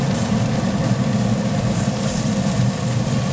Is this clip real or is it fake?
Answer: real